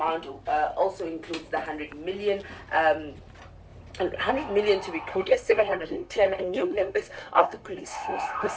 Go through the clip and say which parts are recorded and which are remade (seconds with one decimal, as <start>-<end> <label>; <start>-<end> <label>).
0.0-5.1 recorded; 5.1-8.6 remade